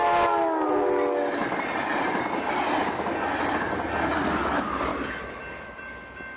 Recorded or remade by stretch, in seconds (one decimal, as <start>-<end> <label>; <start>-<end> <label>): 0.0-6.4 recorded